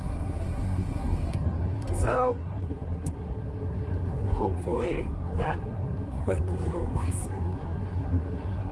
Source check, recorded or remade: remade